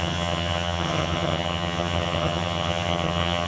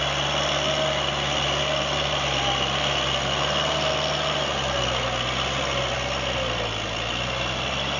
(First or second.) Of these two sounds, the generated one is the first